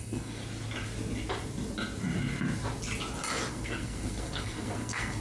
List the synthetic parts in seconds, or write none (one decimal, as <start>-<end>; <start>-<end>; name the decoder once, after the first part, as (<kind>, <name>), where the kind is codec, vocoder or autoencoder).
0.0-0.4 (codec, SNAC); 3.5-5.2